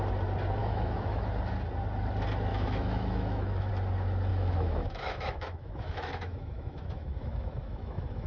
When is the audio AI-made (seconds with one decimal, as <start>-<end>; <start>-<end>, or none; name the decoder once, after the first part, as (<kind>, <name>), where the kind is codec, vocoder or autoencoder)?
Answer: 0.6-1.2 (autoencoder, DAC-VAE); 2.5-3.7; 4.3-8.3